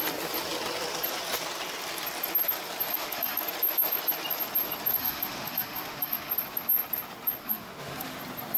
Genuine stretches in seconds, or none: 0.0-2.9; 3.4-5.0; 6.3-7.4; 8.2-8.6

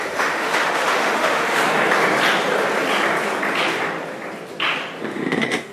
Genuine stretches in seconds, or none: 1.6-5.0

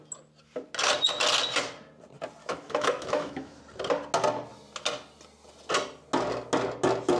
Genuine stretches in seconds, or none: 0.0-2.4; 3.6-7.2